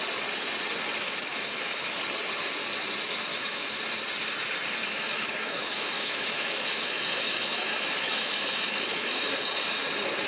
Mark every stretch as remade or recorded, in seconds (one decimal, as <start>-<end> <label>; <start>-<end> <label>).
0.0-1.3 recorded; 1.3-2.0 remade; 2.0-3.3 recorded; 3.3-3.8 remade; 3.8-4.8 recorded; 4.8-9.2 remade; 9.2-10.3 recorded

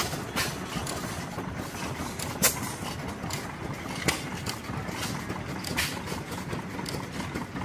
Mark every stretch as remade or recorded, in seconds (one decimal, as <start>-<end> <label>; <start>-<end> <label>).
0.0-7.6 recorded

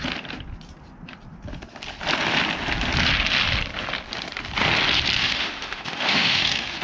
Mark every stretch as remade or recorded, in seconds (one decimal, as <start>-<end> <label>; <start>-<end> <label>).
0.0-5.2 recorded; 5.2-6.8 remade

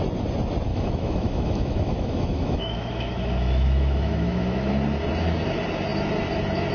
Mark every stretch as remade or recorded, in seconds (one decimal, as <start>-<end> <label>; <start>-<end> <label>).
0.0-0.7 recorded; 0.7-4.7 remade; 4.7-6.7 recorded

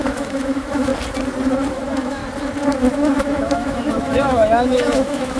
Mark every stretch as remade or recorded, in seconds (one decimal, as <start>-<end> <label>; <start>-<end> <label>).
0.0-0.9 remade; 0.9-1.7 recorded; 1.7-2.2 remade; 2.2-2.8 recorded; 2.8-5.4 remade

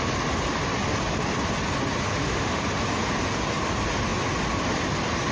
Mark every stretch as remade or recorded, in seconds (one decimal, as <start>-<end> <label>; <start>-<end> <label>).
0.0-2.1 recorded; 2.1-2.6 remade; 2.6-5.3 recorded